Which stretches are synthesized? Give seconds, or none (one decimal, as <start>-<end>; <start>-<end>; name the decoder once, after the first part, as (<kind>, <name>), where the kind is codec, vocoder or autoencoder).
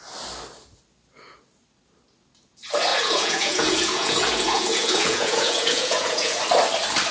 2.9-6.4 (vocoder, Vocos)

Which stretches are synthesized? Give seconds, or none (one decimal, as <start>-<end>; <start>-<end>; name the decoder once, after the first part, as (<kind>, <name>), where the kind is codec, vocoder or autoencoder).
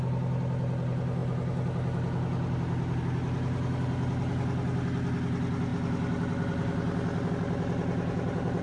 none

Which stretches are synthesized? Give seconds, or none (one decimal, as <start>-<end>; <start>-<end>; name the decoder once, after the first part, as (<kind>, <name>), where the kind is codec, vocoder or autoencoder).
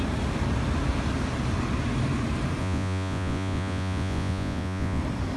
2.6-5.0 (vocoder, Vocos)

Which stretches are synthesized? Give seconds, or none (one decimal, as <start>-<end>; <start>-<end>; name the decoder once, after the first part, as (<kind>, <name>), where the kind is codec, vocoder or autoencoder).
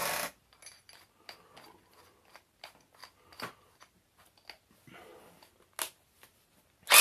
none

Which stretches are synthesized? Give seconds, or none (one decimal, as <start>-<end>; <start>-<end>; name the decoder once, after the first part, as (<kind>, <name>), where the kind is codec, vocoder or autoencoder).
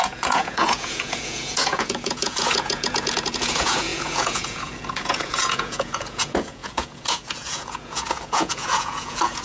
0.0-9.4 (vocoder, Vocos)